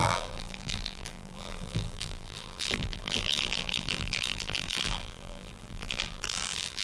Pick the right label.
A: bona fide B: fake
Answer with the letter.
B